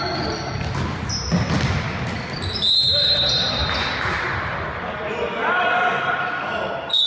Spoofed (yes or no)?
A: no